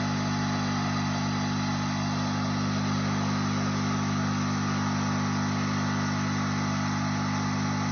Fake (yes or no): no